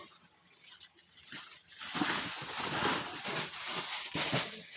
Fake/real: real